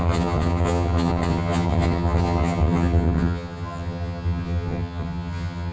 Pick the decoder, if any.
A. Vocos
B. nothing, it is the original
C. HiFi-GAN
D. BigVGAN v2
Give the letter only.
C